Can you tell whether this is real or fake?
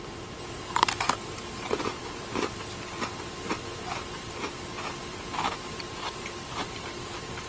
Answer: fake